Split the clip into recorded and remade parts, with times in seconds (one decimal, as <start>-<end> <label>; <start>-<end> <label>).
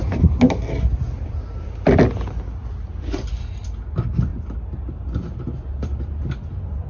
0.0-6.9 recorded